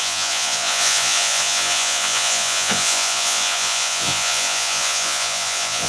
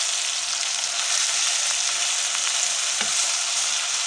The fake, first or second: first